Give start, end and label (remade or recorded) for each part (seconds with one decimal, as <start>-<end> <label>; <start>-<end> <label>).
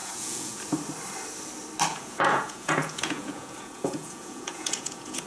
0.0-0.6 remade; 0.6-1.9 recorded; 1.9-5.3 remade